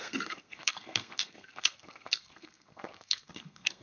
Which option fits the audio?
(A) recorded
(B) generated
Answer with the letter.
B